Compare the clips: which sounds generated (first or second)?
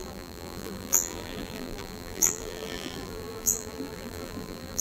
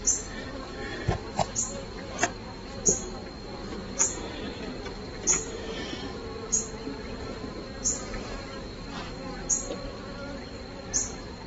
first